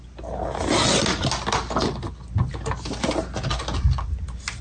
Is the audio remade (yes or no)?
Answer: no